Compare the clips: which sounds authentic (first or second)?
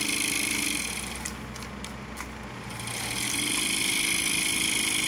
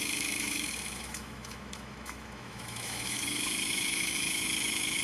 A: first